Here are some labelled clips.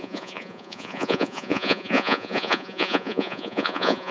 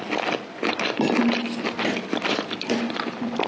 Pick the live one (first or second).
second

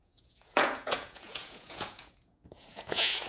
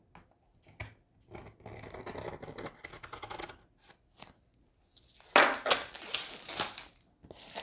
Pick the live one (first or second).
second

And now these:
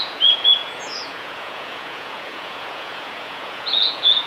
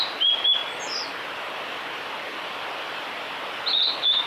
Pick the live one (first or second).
second